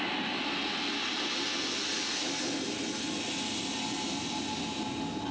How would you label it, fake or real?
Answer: real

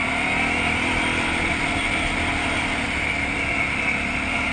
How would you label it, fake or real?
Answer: fake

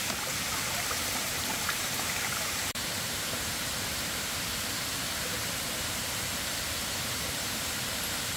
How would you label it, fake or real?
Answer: fake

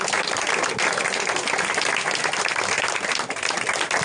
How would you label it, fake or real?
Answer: real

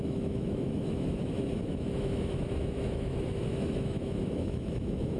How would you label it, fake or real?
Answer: fake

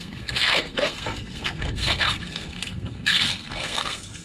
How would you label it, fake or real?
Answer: fake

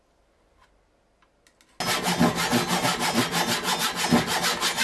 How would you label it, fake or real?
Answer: real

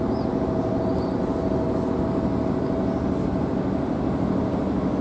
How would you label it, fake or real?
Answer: real